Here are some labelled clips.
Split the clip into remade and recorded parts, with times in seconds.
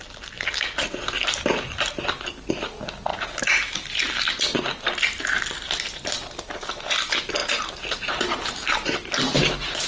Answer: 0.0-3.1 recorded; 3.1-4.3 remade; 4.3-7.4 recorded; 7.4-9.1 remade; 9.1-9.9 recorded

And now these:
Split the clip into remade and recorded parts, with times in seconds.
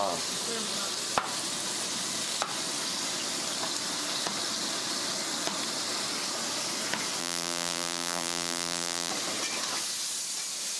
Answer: 0.0-7.2 recorded; 7.2-9.1 remade; 9.1-10.8 recorded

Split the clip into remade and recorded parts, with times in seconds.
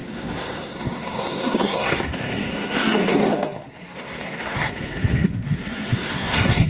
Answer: 0.0-6.7 remade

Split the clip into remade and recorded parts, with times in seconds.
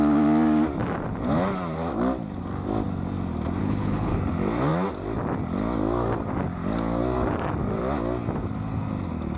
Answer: 0.0-3.6 recorded; 3.6-4.2 remade; 4.2-9.4 recorded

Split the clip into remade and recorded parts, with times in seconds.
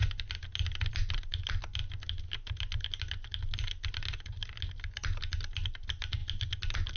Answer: 0.0-0.9 recorded; 0.9-1.8 remade; 1.8-4.7 recorded; 4.7-6.2 remade; 6.2-7.0 recorded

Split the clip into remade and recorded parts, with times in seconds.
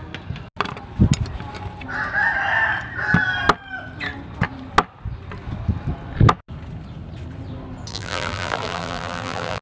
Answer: 0.0-7.9 recorded; 7.9-9.6 remade